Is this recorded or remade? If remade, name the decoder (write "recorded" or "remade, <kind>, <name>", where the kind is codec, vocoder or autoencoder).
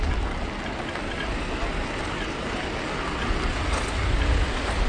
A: recorded